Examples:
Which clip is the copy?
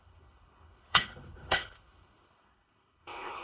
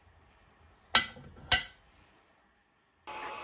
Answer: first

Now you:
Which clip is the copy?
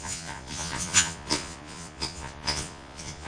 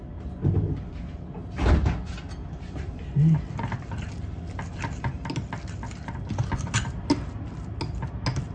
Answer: first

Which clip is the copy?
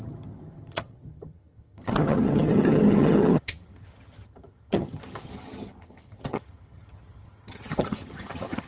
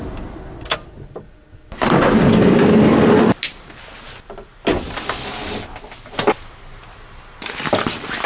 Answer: first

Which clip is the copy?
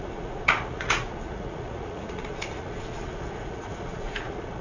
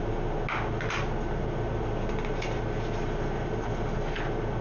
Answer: first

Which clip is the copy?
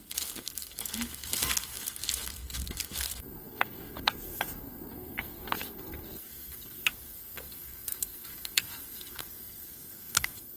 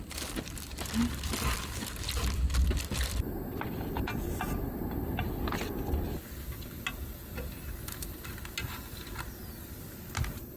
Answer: first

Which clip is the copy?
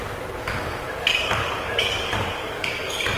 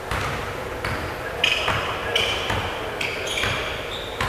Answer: first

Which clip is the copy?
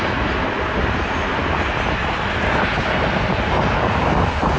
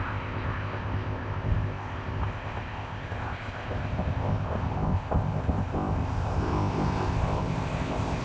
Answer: second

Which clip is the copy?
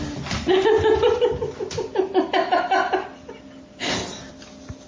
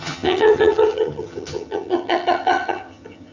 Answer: second